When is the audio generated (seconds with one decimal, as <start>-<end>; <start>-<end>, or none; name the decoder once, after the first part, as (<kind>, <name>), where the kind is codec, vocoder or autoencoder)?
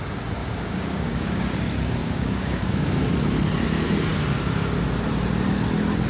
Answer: 0.4-1.4 (codec, DAC); 2.0-2.9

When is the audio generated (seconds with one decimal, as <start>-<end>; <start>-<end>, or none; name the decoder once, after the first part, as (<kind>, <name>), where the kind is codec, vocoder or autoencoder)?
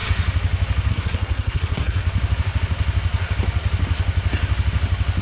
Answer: 0.9-2.0 (codec, SNAC)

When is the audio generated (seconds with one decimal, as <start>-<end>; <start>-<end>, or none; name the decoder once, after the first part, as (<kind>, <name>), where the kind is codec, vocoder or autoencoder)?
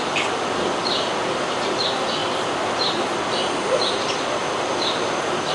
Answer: none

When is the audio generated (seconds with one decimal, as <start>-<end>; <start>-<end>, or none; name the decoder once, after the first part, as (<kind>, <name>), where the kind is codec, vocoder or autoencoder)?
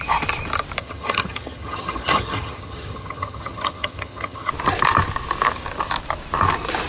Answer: 0.8-4.5 (vocoder, HiFi-GAN)